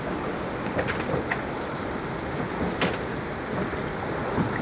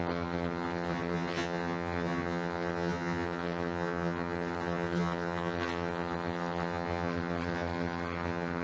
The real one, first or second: first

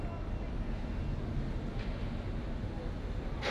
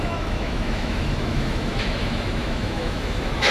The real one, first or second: first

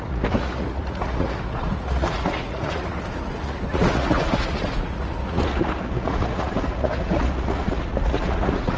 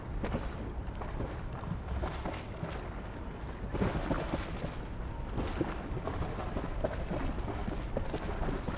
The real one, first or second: second